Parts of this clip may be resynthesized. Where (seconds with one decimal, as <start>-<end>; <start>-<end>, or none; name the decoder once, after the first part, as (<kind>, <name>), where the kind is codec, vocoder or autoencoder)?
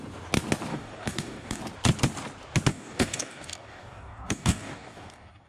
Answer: 0.7-1.6 (codec, DAC); 2.7-5.5